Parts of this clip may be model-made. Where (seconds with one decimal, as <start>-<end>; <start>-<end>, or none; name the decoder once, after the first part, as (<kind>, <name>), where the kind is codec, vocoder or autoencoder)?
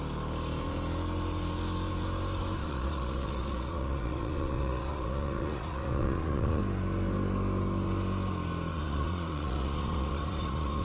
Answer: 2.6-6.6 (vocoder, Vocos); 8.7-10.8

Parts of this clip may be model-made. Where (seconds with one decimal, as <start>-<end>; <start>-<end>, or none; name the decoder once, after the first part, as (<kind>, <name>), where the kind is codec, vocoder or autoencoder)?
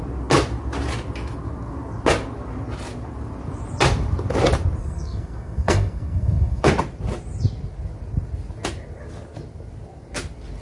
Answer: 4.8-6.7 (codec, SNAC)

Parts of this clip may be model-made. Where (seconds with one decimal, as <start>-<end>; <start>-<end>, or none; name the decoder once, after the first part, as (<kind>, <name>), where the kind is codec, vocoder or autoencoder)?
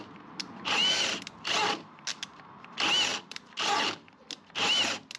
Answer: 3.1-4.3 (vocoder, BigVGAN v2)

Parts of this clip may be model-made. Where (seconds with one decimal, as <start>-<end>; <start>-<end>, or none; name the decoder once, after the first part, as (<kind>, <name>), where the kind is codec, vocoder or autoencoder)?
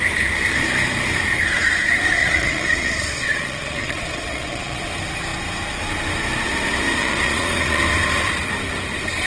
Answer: 2.2-4.8 (vocoder, Vocos); 7.0-7.8